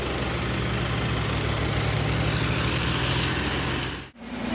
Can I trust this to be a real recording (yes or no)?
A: yes